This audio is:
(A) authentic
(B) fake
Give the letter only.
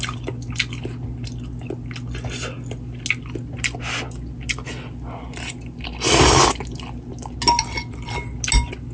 A